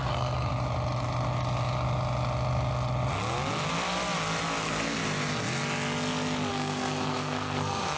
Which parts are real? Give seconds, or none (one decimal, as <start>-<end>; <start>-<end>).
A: 0.5-4.6; 5.0-6.5